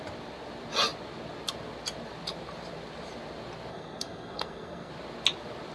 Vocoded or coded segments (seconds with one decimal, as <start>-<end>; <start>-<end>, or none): 3.7-4.9